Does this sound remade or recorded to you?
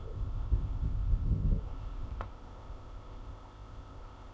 remade